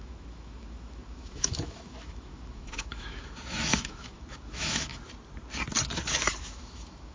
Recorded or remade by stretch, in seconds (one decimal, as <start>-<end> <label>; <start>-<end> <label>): 0.0-4.9 remade; 4.9-6.4 recorded; 6.4-7.1 remade